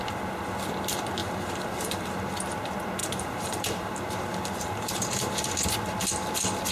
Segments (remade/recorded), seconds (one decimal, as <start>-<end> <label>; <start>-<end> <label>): 0.0-1.2 recorded; 1.2-2.2 remade; 2.2-3.0 recorded; 3.0-5.5 remade; 5.5-6.7 recorded